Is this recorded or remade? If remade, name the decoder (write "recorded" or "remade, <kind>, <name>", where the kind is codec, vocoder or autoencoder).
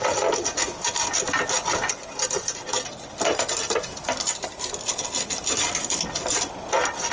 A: recorded